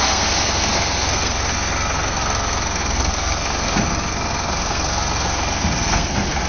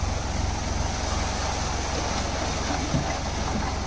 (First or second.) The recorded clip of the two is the second